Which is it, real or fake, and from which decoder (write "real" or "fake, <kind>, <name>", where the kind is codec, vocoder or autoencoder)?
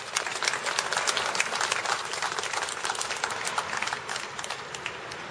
fake, vocoder, BigVGAN v2